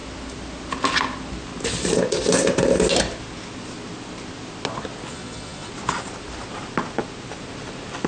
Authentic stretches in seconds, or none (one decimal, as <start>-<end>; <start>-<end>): 0.0-5.1; 5.7-8.1